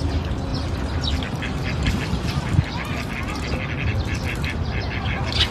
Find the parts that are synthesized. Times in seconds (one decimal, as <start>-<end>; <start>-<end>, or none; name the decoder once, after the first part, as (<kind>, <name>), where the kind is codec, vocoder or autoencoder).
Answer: none